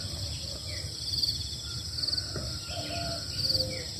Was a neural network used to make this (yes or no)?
no